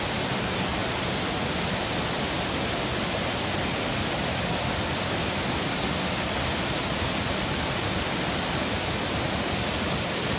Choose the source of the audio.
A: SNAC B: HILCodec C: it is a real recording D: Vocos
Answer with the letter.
C